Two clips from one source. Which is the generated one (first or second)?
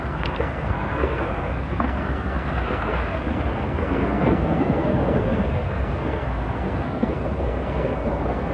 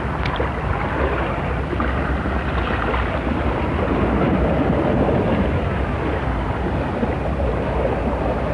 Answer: first